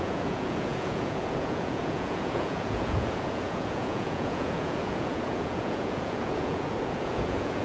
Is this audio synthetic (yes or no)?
yes